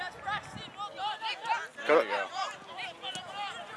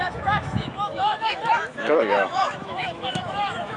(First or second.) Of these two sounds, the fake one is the second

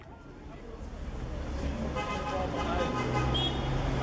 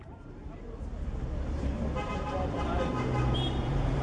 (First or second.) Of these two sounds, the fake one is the second